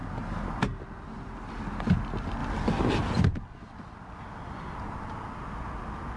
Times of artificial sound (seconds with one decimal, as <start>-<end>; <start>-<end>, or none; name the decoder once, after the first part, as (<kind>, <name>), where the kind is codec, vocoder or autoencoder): none